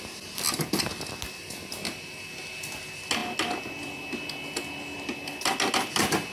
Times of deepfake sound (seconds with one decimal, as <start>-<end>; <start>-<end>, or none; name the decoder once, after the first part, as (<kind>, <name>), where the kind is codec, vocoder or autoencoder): none